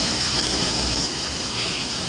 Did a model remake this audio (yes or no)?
yes